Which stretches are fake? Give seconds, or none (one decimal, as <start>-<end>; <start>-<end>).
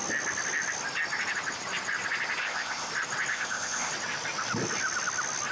2.4-2.9; 3.3-3.9